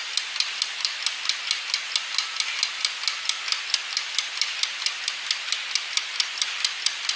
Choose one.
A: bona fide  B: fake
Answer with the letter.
A